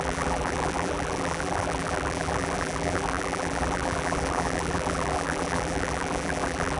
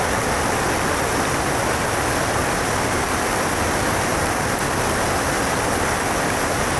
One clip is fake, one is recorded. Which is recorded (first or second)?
second